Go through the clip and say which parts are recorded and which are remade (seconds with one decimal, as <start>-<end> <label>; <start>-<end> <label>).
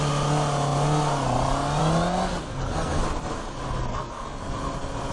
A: 0.0-2.5 recorded; 2.5-3.0 remade; 3.0-3.9 recorded; 3.9-4.5 remade; 4.5-5.1 recorded